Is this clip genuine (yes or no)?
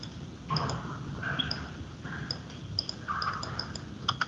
yes